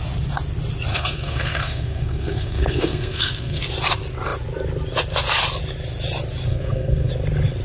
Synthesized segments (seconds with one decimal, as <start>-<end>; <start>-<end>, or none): 0.9-3.6; 6.5-7.1